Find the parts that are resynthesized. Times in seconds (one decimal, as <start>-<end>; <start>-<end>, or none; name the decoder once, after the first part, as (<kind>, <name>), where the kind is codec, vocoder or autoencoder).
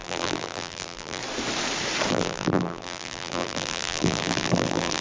0.0-1.2 (vocoder, BigVGAN v2); 2.1-5.0